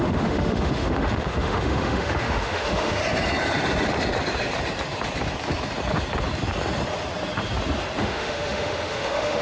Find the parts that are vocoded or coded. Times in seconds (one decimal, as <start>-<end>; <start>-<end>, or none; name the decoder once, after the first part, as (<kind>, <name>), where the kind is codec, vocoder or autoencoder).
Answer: 0.0-3.0 (autoencoder, DAC-VAE); 8.0-9.4